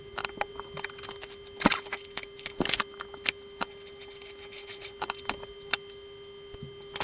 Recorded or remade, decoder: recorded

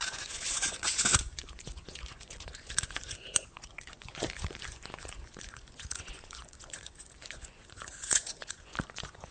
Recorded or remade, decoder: remade, vocoder, Vocos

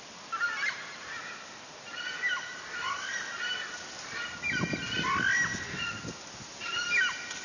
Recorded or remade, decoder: recorded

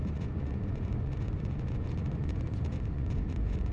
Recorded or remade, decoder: remade, vocoder, Vocos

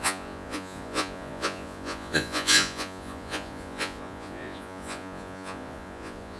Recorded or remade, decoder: remade, vocoder, Vocos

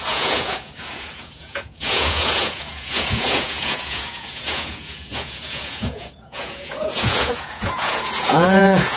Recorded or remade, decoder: remade, vocoder, Vocos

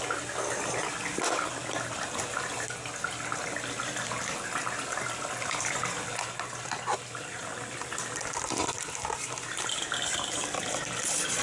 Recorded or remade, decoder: recorded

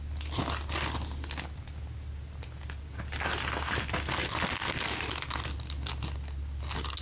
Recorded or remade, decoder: recorded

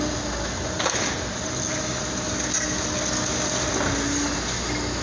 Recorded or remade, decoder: recorded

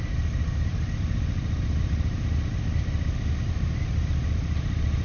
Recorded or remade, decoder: recorded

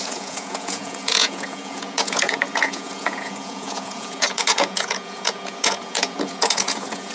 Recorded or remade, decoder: remade, vocoder, Vocos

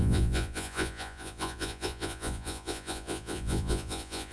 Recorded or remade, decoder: remade, vocoder, Vocos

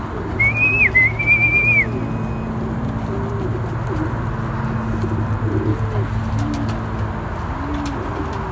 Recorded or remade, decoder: recorded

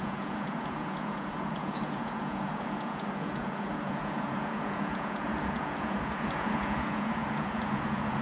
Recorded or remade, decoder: remade, vocoder, Vocos